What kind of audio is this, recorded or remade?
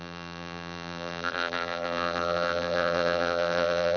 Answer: remade